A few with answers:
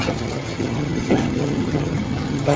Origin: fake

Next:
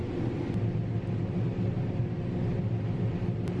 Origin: real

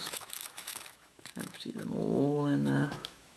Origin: fake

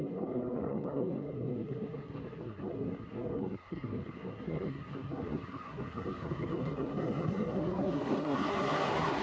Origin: fake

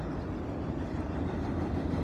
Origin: real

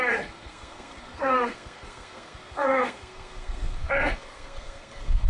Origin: fake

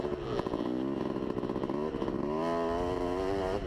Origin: real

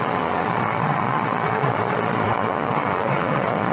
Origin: fake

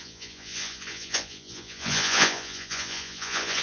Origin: fake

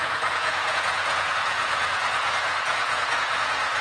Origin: fake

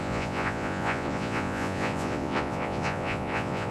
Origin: fake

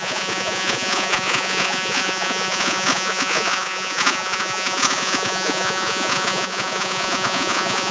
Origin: fake